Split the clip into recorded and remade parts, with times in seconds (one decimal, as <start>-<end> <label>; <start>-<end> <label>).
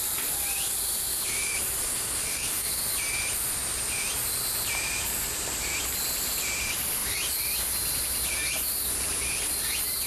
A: 0.0-1.9 recorded; 1.9-2.7 remade; 2.7-10.1 recorded